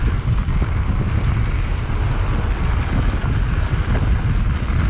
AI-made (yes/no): no